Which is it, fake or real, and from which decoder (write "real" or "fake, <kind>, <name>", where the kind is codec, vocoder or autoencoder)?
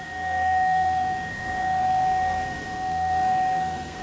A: fake, codec, SNAC